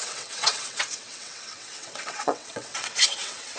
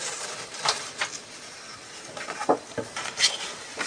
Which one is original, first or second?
second